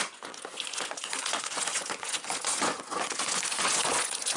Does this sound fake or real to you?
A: fake